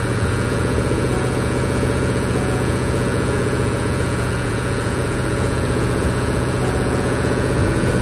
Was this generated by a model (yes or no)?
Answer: yes